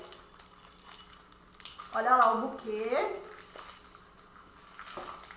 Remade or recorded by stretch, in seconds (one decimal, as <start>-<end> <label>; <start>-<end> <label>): 0.0-5.4 recorded